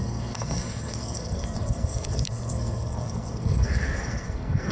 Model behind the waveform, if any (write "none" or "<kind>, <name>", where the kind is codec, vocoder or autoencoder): codec, SNAC